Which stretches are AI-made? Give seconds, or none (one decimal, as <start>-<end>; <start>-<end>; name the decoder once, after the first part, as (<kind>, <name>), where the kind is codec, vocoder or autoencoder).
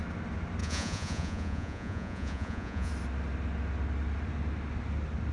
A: 0.6-2.9 (vocoder, Vocos)